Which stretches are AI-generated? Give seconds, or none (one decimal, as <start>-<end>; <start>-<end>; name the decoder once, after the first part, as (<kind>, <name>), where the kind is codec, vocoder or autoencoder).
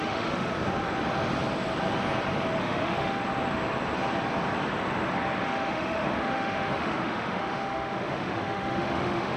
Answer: 0.0-0.5 (autoencoder, DAC-VAE); 2.6-3.2; 5.4-9.4